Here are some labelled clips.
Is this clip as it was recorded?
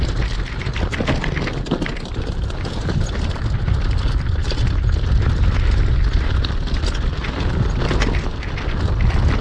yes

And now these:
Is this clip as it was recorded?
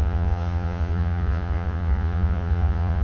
no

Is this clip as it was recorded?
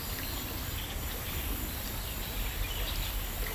yes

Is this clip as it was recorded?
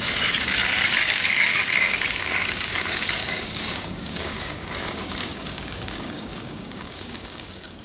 no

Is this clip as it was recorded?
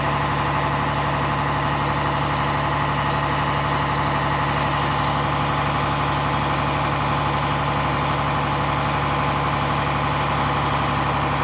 yes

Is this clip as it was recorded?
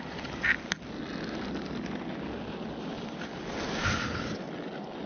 yes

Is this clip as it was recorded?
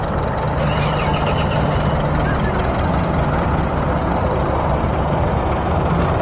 yes